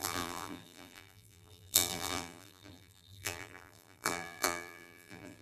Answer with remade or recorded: remade